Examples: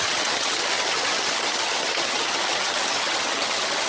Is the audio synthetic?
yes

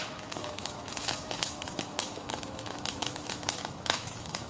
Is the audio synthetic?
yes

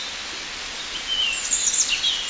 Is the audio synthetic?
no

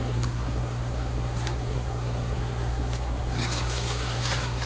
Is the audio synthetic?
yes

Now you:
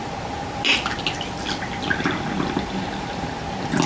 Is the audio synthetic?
no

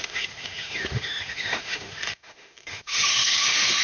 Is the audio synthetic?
yes